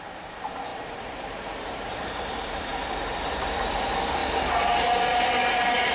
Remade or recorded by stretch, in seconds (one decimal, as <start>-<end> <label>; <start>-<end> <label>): 0.0-2.7 remade; 2.7-3.2 recorded; 3.2-4.2 remade; 4.2-5.9 recorded